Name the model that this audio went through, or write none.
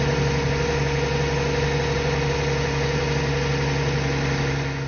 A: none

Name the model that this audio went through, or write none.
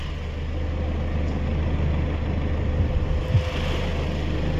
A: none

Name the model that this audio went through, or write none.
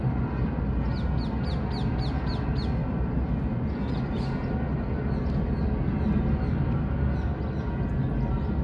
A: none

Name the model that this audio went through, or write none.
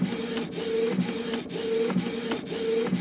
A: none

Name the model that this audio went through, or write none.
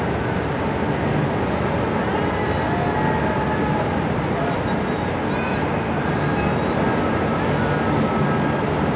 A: none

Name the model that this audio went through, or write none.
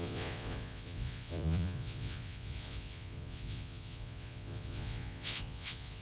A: vocoder, Vocos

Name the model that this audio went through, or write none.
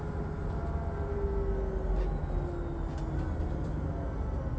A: none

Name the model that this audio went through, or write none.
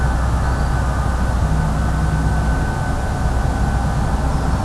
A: none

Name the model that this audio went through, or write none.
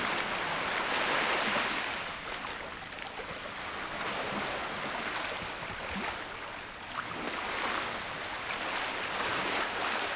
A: none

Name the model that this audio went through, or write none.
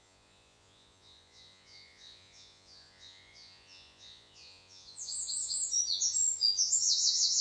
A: vocoder, Vocos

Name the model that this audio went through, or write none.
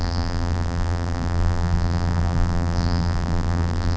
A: vocoder, BigVGAN v2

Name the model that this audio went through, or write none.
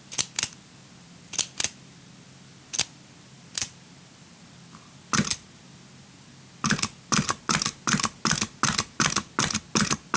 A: none